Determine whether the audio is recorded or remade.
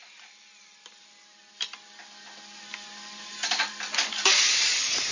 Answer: recorded